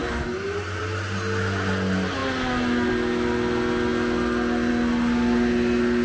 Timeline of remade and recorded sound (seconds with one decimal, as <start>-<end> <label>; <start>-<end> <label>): 0.0-6.0 recorded